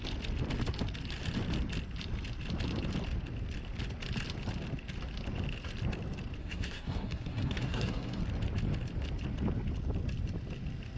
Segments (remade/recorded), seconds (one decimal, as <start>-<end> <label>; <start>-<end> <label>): 0.0-6.4 recorded; 6.4-8.2 remade; 8.2-11.0 recorded